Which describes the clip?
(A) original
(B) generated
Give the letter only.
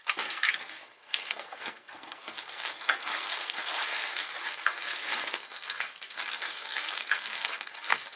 B